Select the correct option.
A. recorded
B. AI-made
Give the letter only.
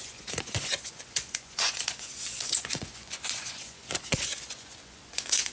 B